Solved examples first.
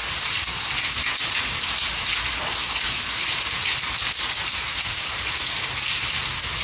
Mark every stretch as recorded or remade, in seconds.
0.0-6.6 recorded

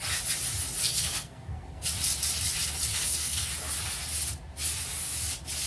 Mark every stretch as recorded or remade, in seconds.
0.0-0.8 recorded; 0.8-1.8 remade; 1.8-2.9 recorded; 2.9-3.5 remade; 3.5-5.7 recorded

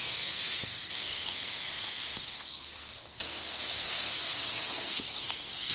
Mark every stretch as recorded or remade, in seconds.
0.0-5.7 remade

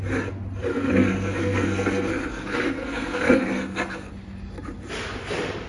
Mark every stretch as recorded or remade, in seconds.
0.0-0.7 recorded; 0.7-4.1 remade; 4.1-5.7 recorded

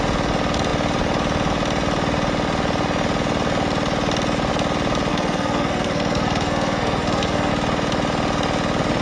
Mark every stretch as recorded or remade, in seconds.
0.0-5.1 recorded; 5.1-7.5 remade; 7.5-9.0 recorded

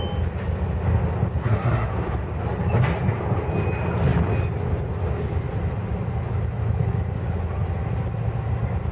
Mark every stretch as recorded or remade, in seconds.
0.0-1.4 recorded; 1.4-1.9 remade; 1.9-8.9 recorded

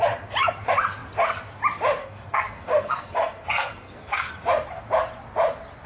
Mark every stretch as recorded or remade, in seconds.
0.0-2.0 recorded; 2.0-4.3 remade; 4.3-5.9 recorded